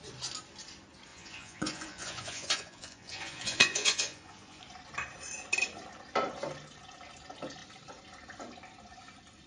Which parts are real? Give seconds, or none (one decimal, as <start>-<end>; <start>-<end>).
0.0-1.1; 4.6-9.5